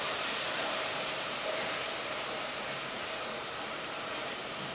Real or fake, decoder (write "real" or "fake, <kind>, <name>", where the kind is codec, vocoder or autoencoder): fake, vocoder, BigVGAN v2